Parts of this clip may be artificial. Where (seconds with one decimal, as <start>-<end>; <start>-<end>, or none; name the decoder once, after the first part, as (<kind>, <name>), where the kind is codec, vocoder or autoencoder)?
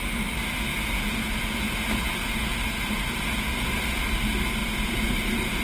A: 0.7-4.1 (vocoder, Vocos); 4.6-5.6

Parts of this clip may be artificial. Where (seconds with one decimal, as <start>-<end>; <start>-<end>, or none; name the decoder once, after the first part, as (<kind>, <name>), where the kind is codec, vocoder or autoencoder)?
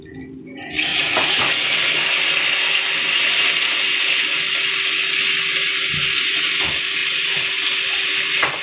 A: 0.9-1.5 (vocoder, Vocos)